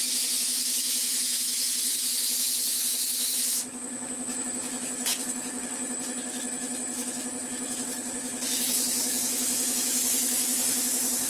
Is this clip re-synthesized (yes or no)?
yes